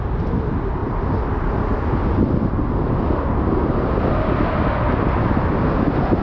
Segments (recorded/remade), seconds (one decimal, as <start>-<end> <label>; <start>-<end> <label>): 0.0-6.2 recorded